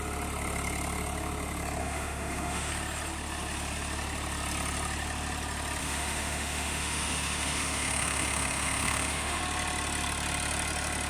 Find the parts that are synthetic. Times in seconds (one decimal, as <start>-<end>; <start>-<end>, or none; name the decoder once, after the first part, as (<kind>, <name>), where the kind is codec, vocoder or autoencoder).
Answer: 1.8-2.7 (autoencoder, DAC-VAE); 5.8-9.4